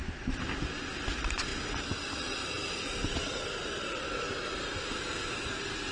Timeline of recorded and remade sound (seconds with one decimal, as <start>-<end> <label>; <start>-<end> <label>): 0.0-5.9 recorded